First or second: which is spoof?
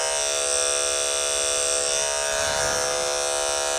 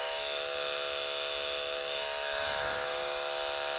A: second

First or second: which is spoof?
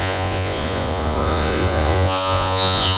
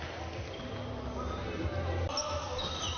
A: first